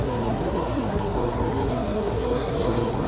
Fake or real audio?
fake